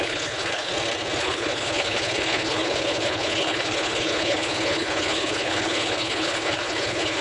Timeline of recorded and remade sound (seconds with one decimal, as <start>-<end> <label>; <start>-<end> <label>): 0.0-0.7 remade; 0.7-1.2 recorded; 1.2-7.2 remade

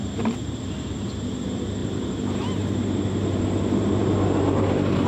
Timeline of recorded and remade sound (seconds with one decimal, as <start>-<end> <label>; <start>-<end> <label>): 0.0-1.8 recorded; 1.8-5.1 remade

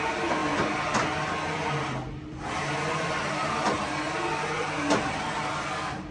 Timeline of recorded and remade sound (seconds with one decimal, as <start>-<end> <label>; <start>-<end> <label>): 0.0-6.1 recorded

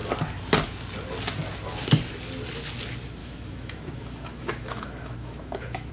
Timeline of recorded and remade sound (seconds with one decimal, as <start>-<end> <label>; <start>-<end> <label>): 0.0-3.2 recorded; 3.2-5.9 remade

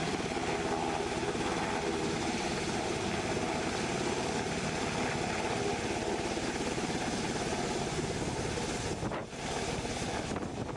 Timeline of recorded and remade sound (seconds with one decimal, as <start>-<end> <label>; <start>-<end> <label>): 0.0-9.2 recorded; 9.2-9.7 remade; 9.7-10.8 recorded